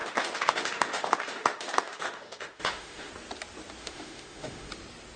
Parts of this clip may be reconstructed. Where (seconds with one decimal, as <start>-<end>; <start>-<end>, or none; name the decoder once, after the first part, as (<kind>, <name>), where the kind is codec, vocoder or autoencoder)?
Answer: 0.0-3.1 (autoencoder, DAC-VAE); 3.8-4.7